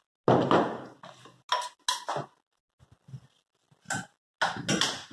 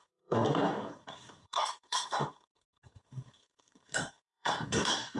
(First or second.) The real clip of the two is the first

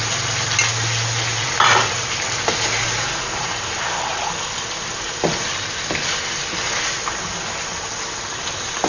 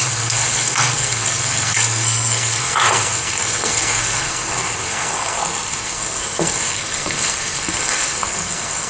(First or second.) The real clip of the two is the first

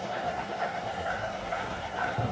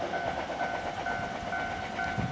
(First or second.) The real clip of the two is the second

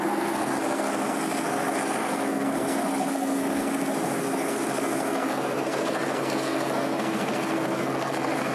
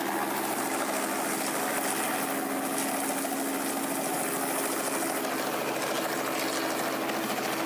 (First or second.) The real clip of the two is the second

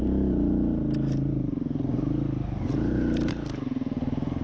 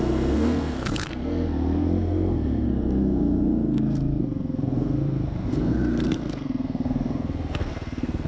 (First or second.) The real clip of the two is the first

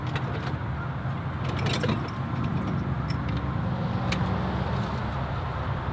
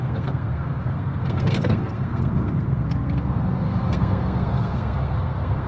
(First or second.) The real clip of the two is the first